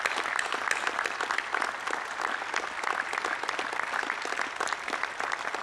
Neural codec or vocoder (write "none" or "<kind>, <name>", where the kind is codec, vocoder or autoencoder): none